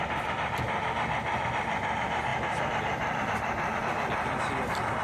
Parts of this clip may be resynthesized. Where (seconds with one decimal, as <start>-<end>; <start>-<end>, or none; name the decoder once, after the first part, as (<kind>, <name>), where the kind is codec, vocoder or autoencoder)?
none

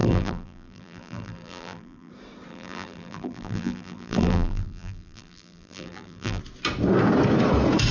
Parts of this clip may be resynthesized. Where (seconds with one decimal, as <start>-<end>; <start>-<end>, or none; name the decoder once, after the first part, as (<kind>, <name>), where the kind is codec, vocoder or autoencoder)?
0.0-2.1 (vocoder, BigVGAN v2); 2.5-6.4

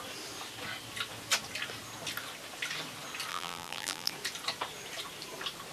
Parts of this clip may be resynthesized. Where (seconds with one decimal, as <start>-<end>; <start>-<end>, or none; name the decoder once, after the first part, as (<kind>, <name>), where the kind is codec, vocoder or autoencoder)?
3.3-4.1 (vocoder, BigVGAN v2)